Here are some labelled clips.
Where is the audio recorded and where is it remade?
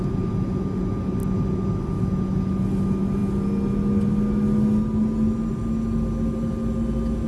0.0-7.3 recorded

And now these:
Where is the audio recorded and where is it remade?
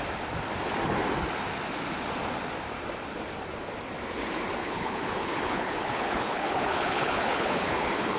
0.0-4.6 recorded; 4.6-8.2 remade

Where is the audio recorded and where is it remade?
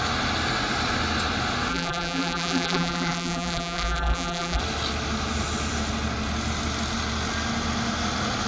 0.0-1.7 recorded; 1.7-4.6 remade; 4.6-8.5 recorded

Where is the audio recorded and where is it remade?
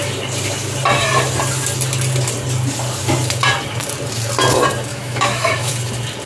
0.0-4.9 recorded; 4.9-5.7 remade; 5.7-6.3 recorded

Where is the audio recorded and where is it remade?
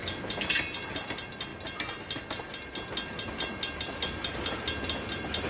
0.0-5.5 recorded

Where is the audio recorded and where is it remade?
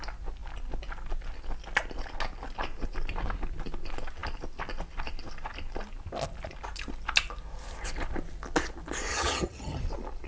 0.0-9.1 recorded; 9.1-9.8 remade; 9.8-10.3 recorded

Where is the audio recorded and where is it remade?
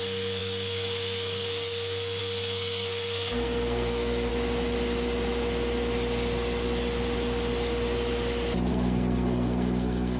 0.0-4.3 remade; 4.3-8.7 recorded; 8.7-10.2 remade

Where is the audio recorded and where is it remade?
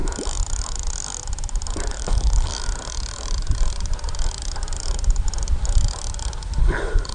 0.0-1.9 recorded; 1.9-2.5 remade; 2.5-6.6 recorded; 6.6-7.1 remade